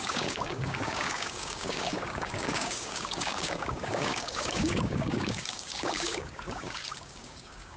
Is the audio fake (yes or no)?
yes